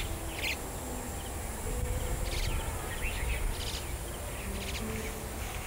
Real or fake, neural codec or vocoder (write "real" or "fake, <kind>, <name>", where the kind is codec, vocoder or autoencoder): real